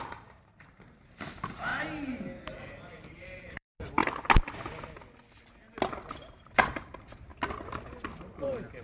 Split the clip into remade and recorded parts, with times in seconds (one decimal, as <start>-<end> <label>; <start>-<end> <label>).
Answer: 0.0-1.7 remade; 1.7-2.6 recorded; 2.6-4.0 remade; 4.0-5.9 recorded; 5.9-7.3 remade; 7.3-8.2 recorded; 8.2-8.8 remade